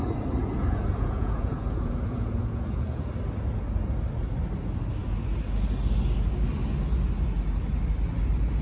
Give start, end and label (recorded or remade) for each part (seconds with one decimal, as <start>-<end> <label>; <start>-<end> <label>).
0.0-0.4 recorded; 0.4-3.1 remade; 3.1-8.6 recorded